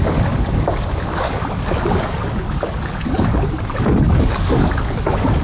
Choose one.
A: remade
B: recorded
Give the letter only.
A